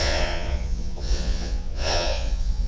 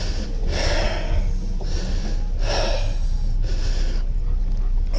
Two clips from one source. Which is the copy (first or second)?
first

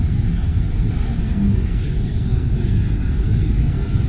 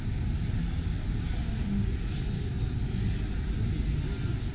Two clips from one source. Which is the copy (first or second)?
first